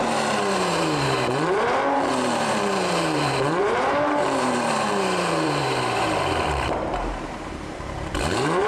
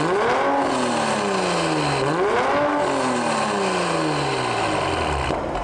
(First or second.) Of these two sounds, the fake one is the first